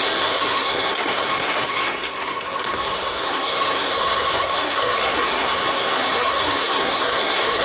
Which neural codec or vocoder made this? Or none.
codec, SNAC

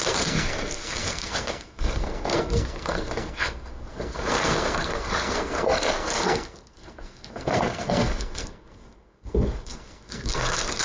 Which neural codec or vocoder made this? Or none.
codec, SNAC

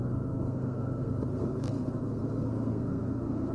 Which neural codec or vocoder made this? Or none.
codec, SNAC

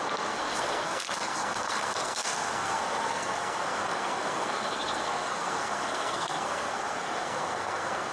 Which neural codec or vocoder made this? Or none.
codec, SNAC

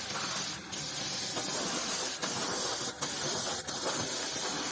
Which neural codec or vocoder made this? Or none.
none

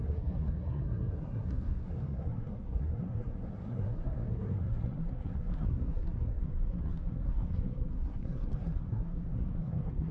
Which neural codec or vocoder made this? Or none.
codec, SNAC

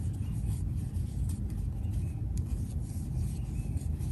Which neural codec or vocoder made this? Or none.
none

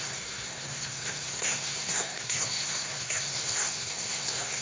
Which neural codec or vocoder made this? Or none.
codec, SNAC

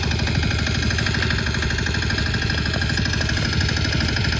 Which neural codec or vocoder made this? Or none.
none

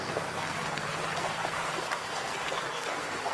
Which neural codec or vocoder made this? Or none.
codec, SNAC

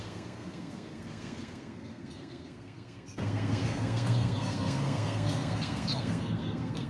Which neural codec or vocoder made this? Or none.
codec, SNAC